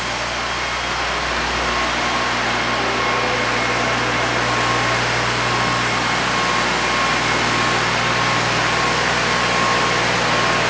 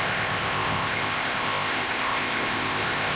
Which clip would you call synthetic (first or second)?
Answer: second